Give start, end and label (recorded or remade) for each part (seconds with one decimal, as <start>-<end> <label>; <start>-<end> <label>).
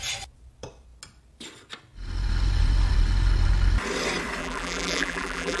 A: 0.0-4.4 recorded; 4.4-5.6 remade